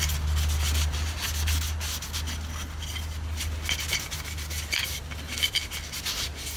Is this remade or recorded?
recorded